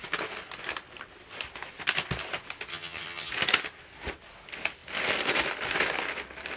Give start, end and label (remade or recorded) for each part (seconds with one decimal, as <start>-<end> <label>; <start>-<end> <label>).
0.0-2.7 recorded; 2.7-3.3 remade; 3.3-6.6 recorded